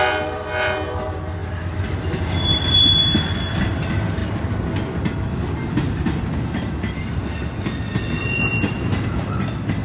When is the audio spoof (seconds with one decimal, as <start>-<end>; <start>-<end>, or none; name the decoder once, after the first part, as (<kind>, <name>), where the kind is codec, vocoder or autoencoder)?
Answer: none